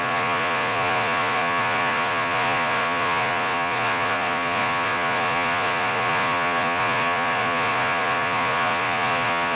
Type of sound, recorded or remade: remade